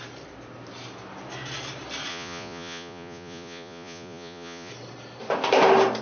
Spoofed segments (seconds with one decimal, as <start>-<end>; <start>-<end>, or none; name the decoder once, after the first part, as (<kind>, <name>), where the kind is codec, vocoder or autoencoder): 2.1-4.7 (vocoder, Vocos)